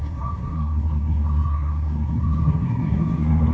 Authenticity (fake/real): fake